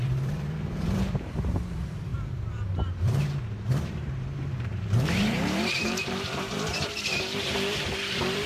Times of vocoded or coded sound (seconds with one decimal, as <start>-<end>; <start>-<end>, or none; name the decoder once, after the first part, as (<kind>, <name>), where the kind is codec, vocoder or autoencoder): 0.0-8.5 (vocoder, BigVGAN v2)